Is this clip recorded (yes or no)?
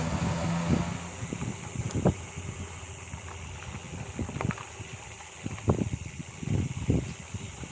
yes